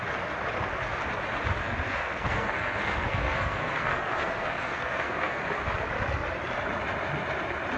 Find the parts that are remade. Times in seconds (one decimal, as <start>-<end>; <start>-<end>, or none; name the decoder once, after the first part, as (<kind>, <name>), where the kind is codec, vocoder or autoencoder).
1.6-5.4 (codec, SNAC)